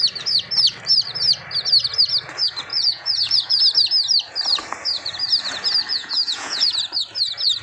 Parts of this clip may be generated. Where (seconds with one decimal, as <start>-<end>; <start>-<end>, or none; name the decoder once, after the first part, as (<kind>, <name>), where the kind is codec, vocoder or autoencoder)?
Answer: 2.7-3.6 (vocoder, Vocos); 5.9-6.7